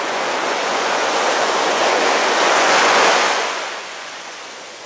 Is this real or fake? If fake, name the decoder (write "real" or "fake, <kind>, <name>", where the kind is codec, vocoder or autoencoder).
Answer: fake, vocoder, Vocos